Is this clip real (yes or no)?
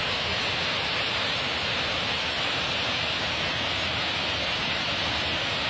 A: yes